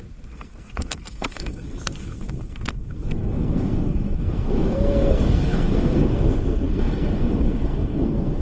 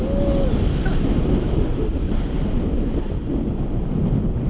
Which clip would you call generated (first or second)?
first